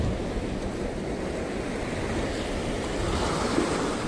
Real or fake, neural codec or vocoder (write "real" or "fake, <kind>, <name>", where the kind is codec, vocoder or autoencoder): real